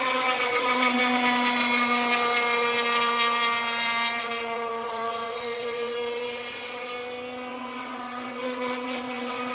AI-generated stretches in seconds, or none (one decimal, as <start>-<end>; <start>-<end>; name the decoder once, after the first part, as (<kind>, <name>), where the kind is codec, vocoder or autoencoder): 0.0-1.0 (vocoder, WaveNeXt); 4.2-6.9; 7.5-9.5